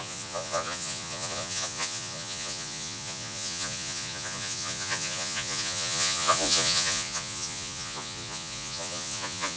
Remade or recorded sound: remade